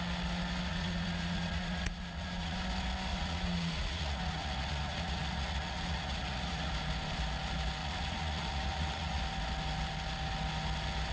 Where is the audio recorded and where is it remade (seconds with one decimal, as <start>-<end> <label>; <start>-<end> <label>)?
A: 0.0-0.7 recorded; 0.7-2.6 remade; 2.6-3.1 recorded; 3.1-6.7 remade; 6.7-7.8 recorded; 7.8-9.2 remade; 9.2-11.1 recorded